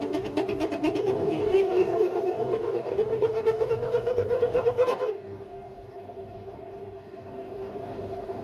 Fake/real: fake